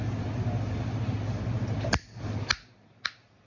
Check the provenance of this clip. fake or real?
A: real